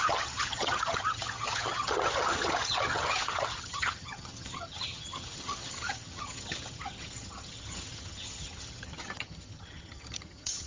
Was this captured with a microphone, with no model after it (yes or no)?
no